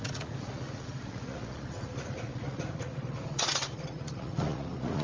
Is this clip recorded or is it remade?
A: remade